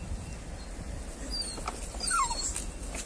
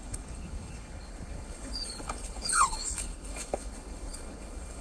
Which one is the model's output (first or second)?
second